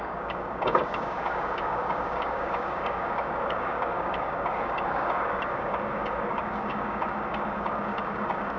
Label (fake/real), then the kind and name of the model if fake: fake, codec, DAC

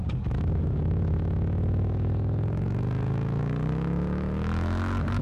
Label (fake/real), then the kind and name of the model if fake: fake, codec, DAC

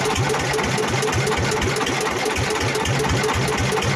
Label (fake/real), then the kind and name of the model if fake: real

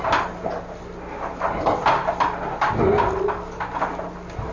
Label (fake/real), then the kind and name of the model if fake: real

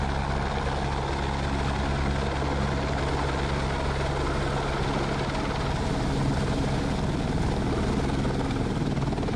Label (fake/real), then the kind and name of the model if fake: real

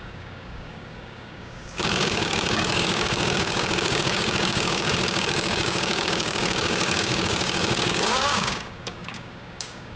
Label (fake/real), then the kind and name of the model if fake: fake, codec, DAC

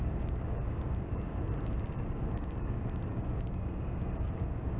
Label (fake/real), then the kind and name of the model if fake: fake, codec, DAC